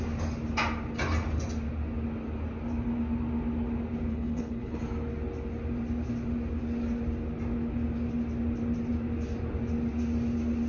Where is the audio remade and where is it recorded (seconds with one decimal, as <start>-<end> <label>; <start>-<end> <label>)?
0.0-4.1 recorded; 4.1-4.8 remade; 4.8-10.7 recorded